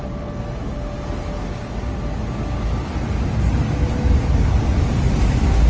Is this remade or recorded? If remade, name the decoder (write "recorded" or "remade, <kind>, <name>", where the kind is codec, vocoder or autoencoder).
recorded